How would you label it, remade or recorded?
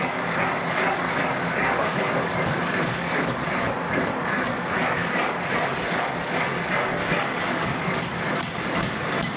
remade